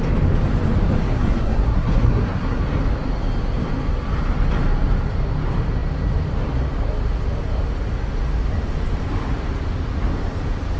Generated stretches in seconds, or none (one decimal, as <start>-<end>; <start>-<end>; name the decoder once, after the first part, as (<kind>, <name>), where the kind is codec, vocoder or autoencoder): 1.0-2.6 (codec, SNAC)